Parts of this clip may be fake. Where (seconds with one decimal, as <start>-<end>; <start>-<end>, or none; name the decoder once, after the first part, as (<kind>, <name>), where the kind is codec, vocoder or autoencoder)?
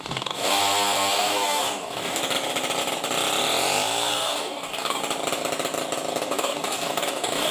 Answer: 0.0-0.6 (codec, DAC); 1.1-2.2; 4.1-5.0; 6.2-7.5